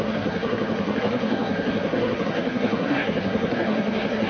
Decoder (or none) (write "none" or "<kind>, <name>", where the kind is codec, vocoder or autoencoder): codec, SNAC